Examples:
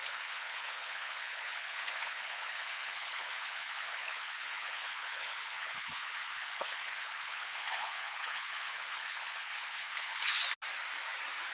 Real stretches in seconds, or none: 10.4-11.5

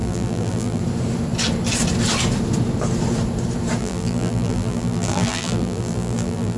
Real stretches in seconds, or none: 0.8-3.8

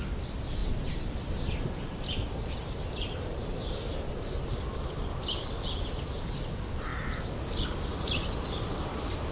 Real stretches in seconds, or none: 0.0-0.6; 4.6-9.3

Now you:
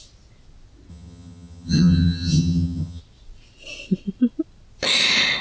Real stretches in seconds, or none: 0.0-0.9; 3.0-5.4

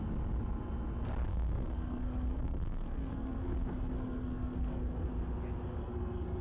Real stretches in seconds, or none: 0.0-1.3; 5.1-5.8

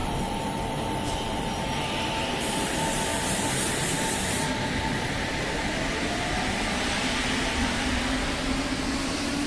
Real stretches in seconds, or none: 5.3-9.5

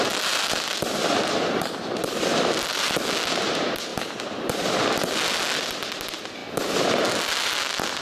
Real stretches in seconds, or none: 0.0-3.9; 4.5-8.0